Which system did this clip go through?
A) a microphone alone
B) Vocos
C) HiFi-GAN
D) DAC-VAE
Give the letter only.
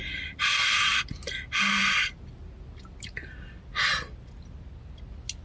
A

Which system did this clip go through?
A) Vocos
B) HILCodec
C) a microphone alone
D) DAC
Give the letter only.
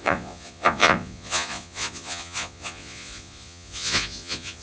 A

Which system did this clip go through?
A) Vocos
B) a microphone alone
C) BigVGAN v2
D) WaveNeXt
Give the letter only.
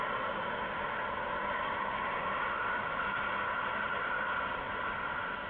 B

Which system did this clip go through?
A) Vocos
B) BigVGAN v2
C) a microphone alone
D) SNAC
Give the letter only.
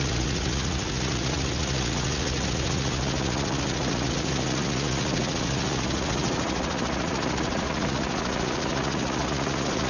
A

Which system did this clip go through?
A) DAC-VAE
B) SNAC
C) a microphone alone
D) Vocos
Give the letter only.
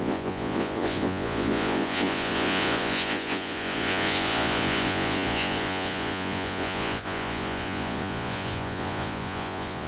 D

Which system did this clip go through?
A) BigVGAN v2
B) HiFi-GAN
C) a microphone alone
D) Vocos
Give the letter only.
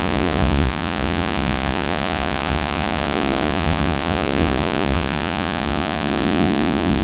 D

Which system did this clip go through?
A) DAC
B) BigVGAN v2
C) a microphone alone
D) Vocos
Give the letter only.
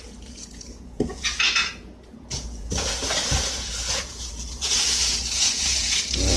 D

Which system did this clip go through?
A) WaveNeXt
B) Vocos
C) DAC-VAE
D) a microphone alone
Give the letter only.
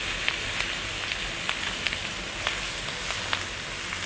D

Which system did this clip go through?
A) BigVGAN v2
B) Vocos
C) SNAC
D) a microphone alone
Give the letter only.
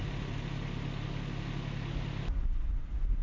D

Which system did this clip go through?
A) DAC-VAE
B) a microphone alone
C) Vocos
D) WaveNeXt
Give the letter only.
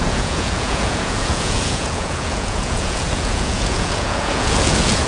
C